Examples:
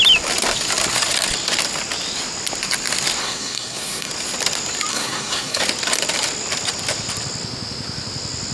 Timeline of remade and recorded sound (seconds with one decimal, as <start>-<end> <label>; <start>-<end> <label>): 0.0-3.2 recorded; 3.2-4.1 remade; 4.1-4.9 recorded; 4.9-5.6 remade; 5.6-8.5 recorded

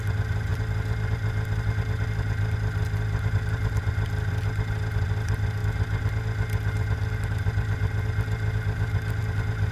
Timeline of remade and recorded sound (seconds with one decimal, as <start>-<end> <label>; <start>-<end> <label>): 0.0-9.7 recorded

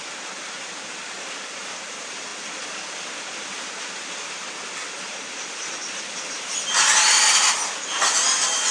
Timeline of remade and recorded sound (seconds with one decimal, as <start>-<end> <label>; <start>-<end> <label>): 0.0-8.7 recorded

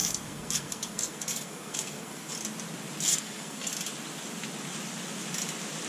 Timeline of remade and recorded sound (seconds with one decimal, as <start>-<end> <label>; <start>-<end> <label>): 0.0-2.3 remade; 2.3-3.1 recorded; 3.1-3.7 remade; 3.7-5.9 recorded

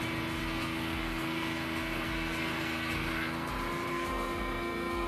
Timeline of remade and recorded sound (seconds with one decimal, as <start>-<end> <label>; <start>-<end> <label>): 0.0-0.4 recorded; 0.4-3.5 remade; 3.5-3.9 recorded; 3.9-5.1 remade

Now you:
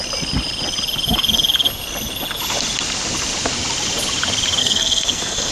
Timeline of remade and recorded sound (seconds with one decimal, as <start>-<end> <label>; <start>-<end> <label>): 0.0-4.6 recorded; 4.6-5.5 remade

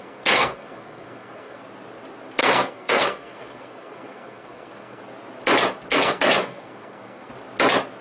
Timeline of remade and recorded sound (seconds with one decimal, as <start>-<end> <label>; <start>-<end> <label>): 0.0-1.6 remade; 1.6-2.4 recorded; 2.4-5.0 remade; 5.0-5.9 recorded; 5.9-7.3 remade; 7.3-8.0 recorded